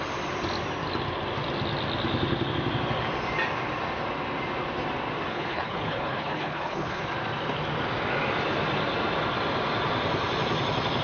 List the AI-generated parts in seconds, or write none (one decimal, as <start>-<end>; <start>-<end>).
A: 5.3-7.0